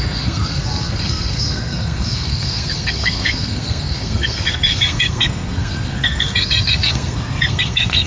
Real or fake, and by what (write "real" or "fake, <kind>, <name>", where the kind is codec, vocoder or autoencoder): fake, codec, SNAC